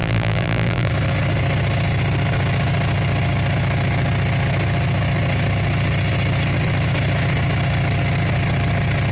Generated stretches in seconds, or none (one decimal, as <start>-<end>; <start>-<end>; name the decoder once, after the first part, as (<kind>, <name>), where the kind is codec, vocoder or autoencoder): 0.0-0.9 (vocoder, BigVGAN v2)